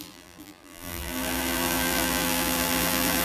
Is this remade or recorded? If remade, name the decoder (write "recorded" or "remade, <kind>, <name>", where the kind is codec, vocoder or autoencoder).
remade, vocoder, BigVGAN v2